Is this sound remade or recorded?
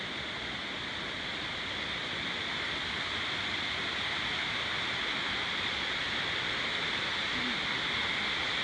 recorded